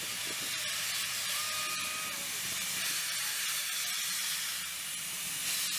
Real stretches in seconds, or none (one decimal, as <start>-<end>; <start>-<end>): 0.0-5.8